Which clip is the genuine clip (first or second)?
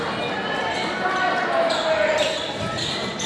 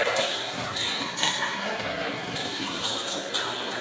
first